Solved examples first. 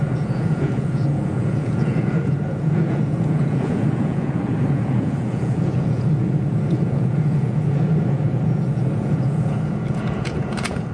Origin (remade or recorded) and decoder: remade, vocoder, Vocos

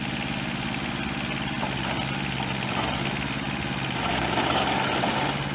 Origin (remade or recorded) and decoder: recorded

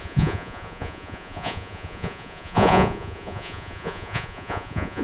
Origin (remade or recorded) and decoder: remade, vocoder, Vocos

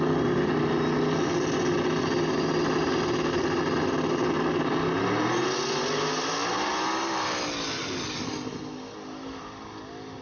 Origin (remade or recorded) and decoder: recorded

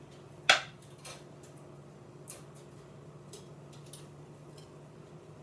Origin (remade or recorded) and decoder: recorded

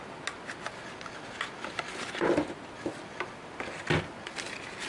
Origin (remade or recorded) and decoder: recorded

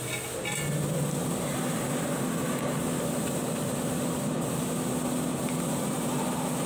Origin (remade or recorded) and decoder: recorded